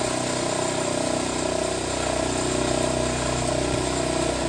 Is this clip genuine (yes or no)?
yes